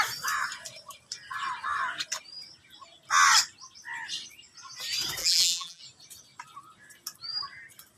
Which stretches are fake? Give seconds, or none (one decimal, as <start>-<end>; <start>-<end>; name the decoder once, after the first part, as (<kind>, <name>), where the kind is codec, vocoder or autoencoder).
5.2-5.8 (vocoder, BigVGAN v2)